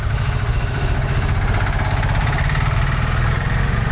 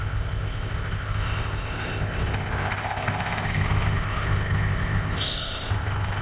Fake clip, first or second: second